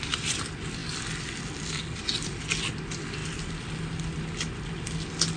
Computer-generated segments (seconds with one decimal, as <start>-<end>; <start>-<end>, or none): none